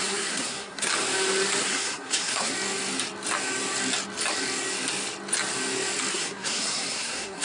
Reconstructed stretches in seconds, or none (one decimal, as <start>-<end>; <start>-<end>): 0.0-0.9; 1.6-2.5; 6.1-7.4